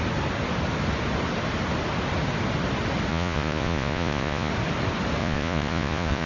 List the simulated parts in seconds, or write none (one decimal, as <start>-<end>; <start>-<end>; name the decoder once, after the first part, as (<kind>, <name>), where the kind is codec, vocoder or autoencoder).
3.1-4.5 (vocoder, Vocos); 5.2-6.3

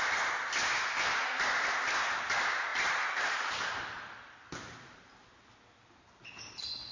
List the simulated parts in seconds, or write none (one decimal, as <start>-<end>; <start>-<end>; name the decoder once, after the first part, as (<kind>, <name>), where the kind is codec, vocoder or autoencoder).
none

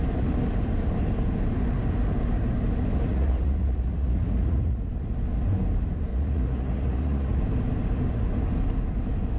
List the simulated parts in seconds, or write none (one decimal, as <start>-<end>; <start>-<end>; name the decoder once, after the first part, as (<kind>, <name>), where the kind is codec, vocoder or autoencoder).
3.1-4.9 (vocoder, Vocos); 6.1-7.4

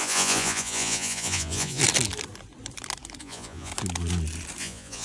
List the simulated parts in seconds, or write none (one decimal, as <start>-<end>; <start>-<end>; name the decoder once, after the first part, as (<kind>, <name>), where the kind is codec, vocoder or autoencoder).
0.0-1.8 (vocoder, Vocos); 3.2-3.7; 4.6-5.0

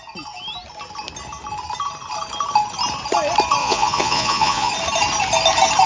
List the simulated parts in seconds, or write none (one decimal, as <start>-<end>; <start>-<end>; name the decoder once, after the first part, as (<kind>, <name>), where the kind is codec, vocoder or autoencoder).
3.6-4.7 (vocoder, Vocos)

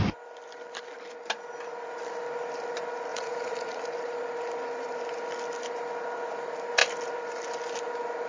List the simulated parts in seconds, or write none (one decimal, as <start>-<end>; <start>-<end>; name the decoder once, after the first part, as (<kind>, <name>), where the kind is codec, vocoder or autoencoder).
3.1-3.8 (vocoder, Vocos)

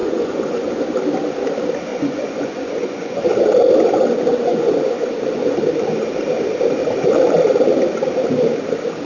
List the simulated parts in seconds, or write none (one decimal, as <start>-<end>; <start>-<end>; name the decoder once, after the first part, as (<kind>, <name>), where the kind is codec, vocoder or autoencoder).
0.0-0.7 (vocoder, Vocos); 1.9-3.2; 4.5-5.2

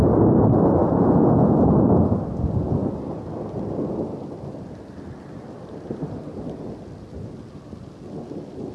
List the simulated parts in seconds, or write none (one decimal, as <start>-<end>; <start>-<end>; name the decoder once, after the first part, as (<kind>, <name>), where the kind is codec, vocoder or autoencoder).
0.8-2.0 (vocoder, Vocos)